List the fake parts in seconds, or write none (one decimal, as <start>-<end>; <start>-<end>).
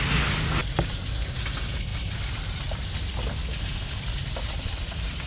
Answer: none